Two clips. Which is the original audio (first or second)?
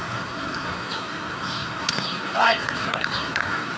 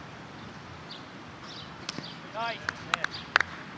second